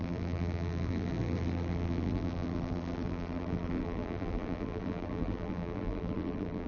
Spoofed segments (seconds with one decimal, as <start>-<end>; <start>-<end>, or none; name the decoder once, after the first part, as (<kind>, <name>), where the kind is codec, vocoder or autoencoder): 0.0-6.7 (vocoder, BigVGAN v2)